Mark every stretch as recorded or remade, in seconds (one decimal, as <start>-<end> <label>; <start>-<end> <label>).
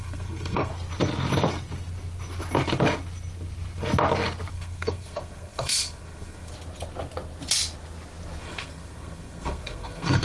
0.0-0.7 remade; 0.7-4.5 recorded; 4.5-6.5 remade; 6.5-8.4 recorded; 8.4-10.2 remade